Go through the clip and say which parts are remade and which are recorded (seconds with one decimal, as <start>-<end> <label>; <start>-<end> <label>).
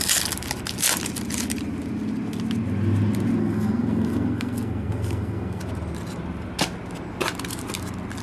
0.0-3.4 recorded; 3.4-5.6 remade; 5.6-8.2 recorded